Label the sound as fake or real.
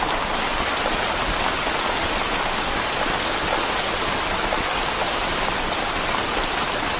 real